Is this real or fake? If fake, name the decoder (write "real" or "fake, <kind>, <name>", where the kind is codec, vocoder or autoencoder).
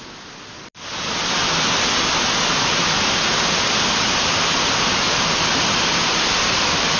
real